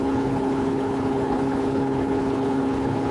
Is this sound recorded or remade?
remade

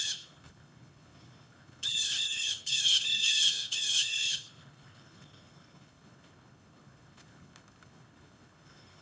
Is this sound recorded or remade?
remade